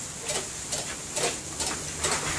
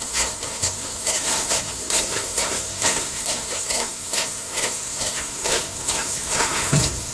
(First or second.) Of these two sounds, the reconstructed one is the second